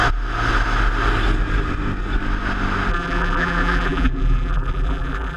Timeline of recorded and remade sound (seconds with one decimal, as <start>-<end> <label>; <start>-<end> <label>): 0.0-2.9 recorded; 2.9-5.4 remade